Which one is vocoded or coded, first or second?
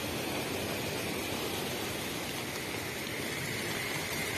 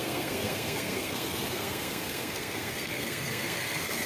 second